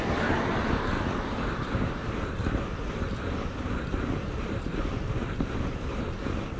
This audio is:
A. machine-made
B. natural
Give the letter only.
B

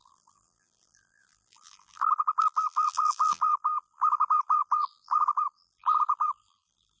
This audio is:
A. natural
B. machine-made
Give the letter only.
B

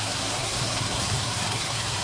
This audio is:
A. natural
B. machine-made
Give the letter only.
B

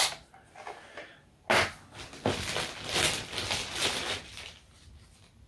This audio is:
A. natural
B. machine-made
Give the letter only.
A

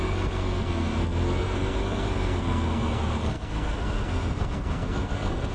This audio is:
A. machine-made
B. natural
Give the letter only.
A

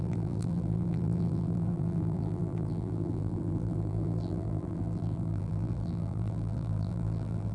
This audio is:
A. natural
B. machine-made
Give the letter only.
B